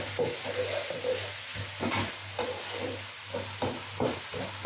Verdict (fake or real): real